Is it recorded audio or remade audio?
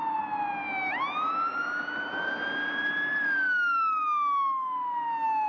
recorded